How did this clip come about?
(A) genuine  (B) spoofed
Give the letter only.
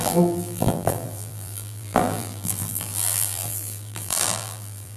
B